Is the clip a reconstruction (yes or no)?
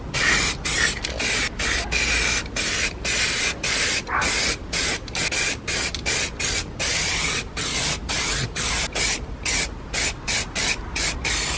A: no